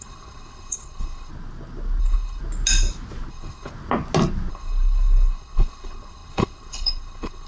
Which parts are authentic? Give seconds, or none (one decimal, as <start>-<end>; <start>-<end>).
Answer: 1.3-2.0; 2.4-3.3; 3.7-4.5